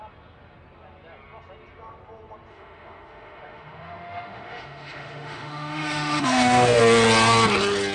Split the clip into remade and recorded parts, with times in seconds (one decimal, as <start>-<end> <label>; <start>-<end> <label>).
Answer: 0.0-2.5 recorded; 2.5-6.8 remade; 6.8-7.9 recorded